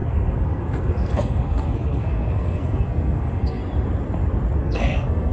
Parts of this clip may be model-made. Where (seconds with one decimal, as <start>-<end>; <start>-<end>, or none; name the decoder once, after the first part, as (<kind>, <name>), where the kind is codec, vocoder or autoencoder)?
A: 0.0-3.6 (codec, SNAC); 4.6-5.3